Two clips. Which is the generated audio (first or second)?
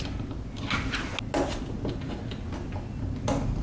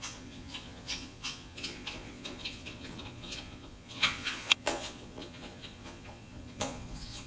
second